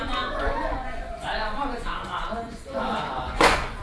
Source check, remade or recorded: remade